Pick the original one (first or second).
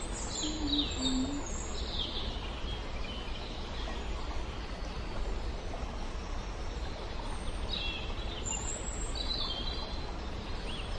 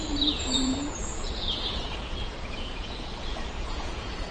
first